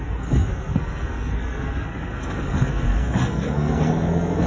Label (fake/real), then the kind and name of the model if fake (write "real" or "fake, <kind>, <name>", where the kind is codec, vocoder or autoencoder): fake, codec, SNAC